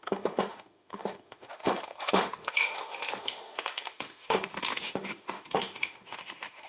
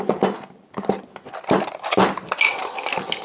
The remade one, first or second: first